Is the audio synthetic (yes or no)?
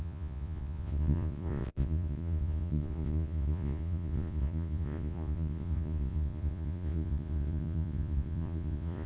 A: yes